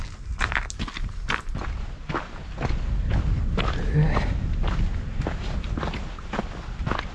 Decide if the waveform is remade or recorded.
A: recorded